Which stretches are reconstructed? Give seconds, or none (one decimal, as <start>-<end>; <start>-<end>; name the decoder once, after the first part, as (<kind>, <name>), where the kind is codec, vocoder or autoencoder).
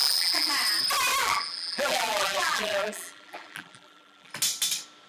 0.0-0.5 (vocoder, BigVGAN v2); 1.2-4.3